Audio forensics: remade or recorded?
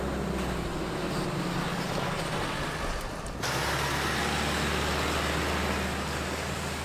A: recorded